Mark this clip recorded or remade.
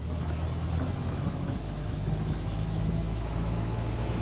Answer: remade